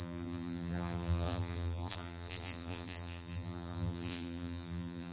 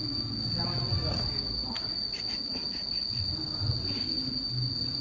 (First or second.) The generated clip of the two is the first